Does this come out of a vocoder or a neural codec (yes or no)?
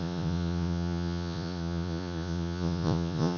yes